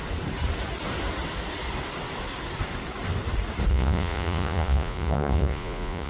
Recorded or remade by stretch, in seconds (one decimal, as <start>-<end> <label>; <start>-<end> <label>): 0.0-3.7 recorded; 3.7-6.1 remade